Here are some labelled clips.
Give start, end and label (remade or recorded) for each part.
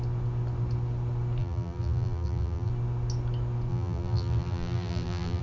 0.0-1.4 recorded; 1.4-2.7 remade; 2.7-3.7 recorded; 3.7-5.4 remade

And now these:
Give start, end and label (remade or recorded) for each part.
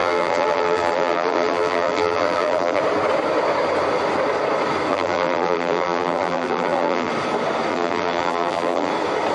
0.0-2.8 remade; 2.8-4.9 recorded; 4.9-7.1 remade; 7.1-7.7 recorded; 7.7-8.9 remade; 8.9-9.3 recorded